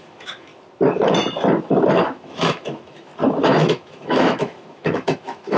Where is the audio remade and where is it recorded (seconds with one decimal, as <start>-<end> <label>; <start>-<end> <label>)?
0.0-0.5 remade; 0.5-2.0 recorded; 2.0-3.1 remade; 3.1-3.7 recorded; 3.7-5.6 remade